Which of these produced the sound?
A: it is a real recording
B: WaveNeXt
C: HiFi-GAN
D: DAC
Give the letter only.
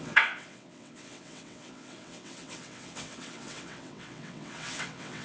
B